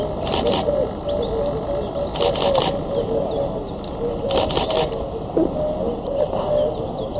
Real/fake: real